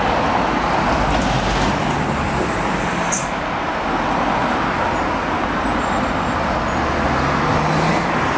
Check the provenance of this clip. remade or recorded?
recorded